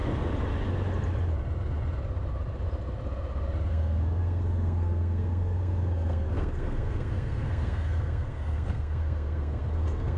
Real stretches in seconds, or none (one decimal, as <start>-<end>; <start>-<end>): 0.0-3.7